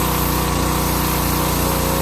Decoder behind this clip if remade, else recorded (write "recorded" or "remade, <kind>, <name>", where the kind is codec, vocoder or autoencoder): recorded